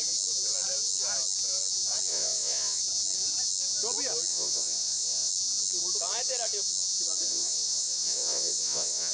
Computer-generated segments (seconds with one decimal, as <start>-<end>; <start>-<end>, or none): 2.1-2.8; 4.3-5.3; 7.3-9.1

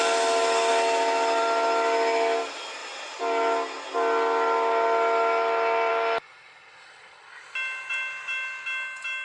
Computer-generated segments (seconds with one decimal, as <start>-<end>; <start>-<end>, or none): none

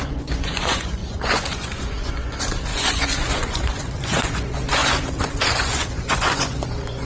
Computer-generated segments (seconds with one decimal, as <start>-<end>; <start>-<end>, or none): 0.0-7.0

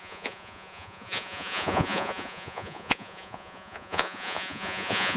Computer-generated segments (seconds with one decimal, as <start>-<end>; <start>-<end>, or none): 0.0-5.2

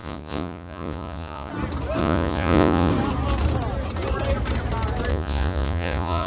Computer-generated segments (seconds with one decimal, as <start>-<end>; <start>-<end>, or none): 0.0-1.5; 2.0-2.9; 5.1-6.3

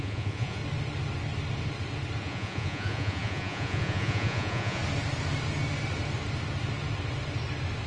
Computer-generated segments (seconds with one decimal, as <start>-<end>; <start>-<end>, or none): 0.0-0.6; 2.2-4.8

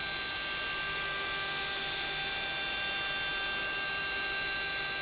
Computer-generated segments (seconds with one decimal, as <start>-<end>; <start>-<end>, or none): none